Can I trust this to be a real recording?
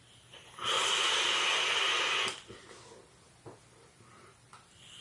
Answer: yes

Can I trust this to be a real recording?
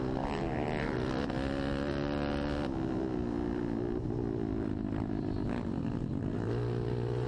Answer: yes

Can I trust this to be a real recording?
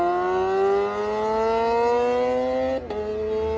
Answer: yes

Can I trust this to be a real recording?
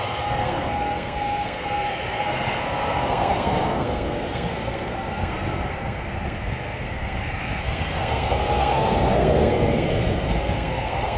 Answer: no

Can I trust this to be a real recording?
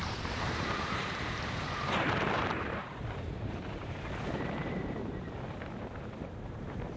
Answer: no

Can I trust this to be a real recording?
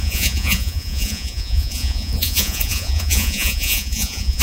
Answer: no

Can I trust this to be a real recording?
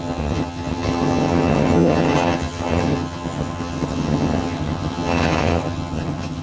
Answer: no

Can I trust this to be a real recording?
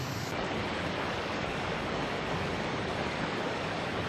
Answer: no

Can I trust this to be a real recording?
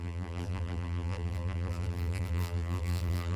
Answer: no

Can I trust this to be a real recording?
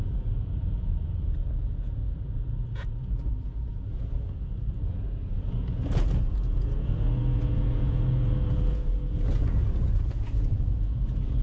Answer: no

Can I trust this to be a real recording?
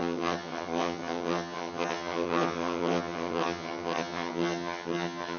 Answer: no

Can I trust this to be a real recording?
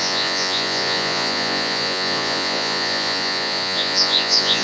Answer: no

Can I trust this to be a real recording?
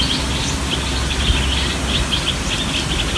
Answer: yes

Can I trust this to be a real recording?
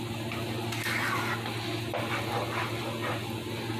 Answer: yes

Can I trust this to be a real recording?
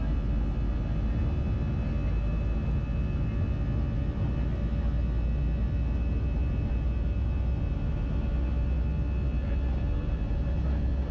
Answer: yes